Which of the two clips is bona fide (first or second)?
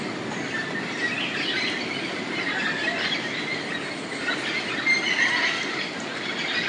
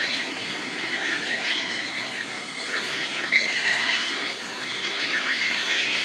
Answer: first